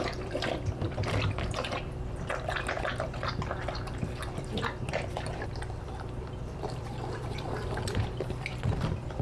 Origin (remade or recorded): remade